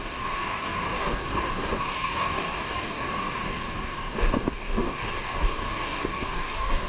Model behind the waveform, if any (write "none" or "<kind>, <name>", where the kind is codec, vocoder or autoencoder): codec, DAC